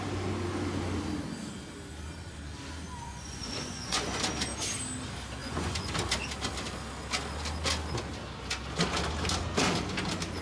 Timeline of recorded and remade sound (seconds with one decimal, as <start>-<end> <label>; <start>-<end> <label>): 0.0-3.1 recorded; 3.1-4.2 remade; 4.2-5.4 recorded; 5.4-5.9 remade; 5.9-10.4 recorded